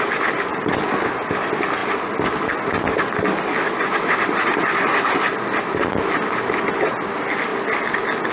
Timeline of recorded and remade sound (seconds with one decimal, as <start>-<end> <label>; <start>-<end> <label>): 0.0-8.3 recorded